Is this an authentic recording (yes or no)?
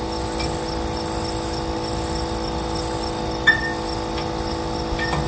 yes